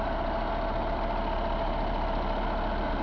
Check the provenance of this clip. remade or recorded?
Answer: recorded